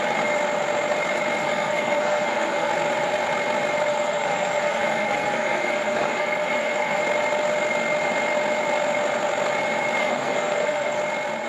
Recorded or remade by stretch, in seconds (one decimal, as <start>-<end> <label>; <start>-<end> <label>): 0.0-1.4 recorded; 1.4-2.7 remade; 2.7-3.9 recorded; 3.9-7.0 remade; 7.0-10.0 recorded; 10.0-11.0 remade; 11.0-11.5 recorded